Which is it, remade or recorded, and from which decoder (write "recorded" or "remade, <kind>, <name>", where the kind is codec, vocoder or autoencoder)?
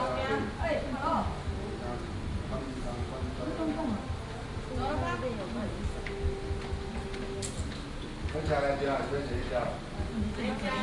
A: recorded